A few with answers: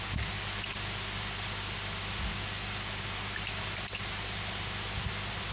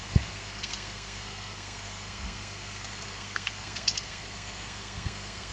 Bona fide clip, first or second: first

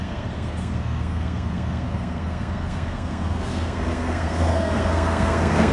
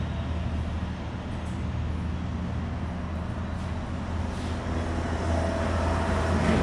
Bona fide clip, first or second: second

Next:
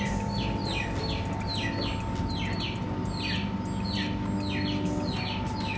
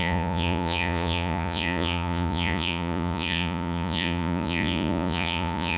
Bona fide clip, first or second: first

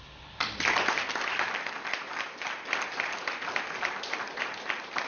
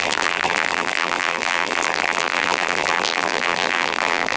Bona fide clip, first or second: first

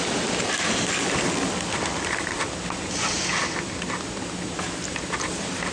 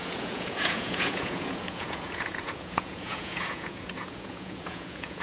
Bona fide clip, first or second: first